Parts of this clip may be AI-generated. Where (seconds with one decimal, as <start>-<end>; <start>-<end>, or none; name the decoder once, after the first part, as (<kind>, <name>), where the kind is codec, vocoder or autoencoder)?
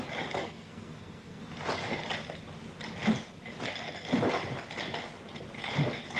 0.4-1.4 (codec, SNAC)